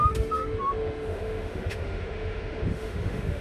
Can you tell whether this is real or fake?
fake